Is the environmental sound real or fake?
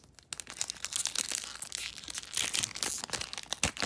real